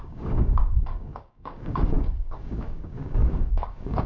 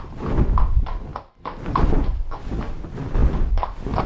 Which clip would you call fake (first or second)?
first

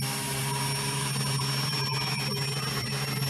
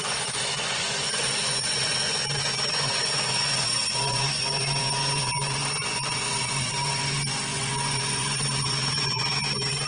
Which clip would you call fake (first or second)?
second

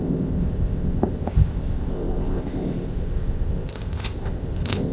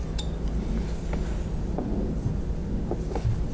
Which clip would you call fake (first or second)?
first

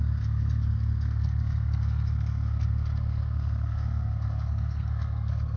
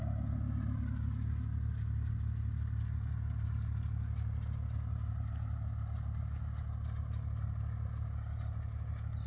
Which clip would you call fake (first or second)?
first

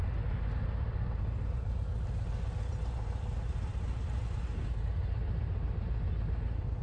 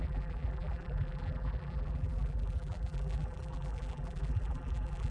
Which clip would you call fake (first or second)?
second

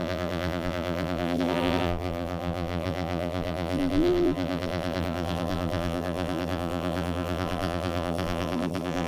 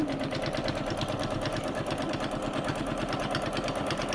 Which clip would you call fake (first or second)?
first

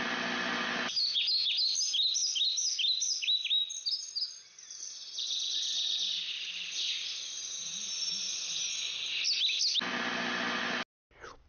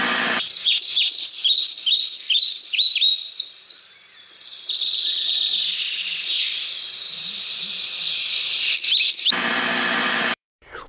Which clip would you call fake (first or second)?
second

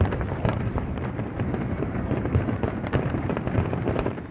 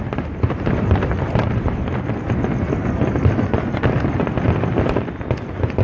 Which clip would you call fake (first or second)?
first